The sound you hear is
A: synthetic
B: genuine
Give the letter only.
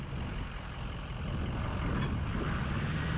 B